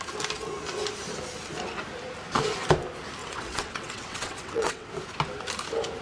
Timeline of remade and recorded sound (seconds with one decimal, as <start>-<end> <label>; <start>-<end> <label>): 0.0-3.2 recorded; 3.2-4.9 remade; 4.9-6.0 recorded